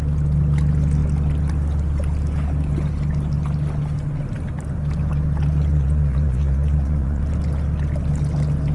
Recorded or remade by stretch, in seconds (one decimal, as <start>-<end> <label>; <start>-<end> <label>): 0.0-5.7 recorded; 5.7-7.2 remade; 7.2-8.7 recorded